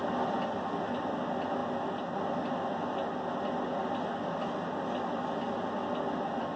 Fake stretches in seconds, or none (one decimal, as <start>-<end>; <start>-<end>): none